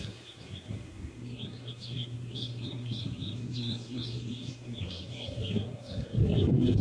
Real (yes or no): no